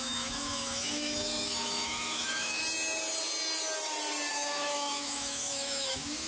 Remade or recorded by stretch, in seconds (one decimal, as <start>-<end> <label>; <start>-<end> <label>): 0.0-2.6 remade; 2.6-4.3 recorded; 4.3-6.3 remade